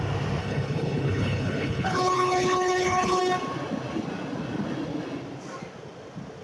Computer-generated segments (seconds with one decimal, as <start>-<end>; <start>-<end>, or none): 0.4-3.2